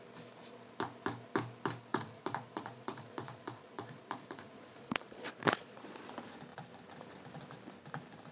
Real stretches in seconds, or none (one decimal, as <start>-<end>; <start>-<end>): 0.0-1.9; 6.1-8.3